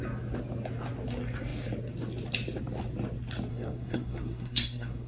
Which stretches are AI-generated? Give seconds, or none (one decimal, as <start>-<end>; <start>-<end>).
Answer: 3.5-5.1

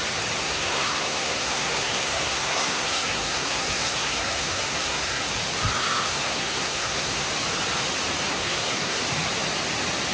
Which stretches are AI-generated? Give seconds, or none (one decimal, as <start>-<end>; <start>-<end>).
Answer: 0.4-5.3; 5.8-7.3; 8.3-9.0

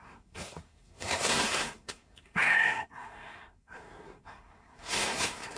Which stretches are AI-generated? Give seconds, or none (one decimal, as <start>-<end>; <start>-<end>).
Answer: 0.0-5.6

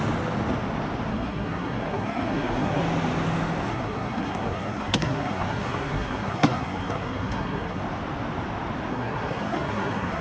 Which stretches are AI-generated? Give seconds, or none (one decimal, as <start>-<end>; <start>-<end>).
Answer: 1.1-2.8; 3.7-7.8; 8.9-10.2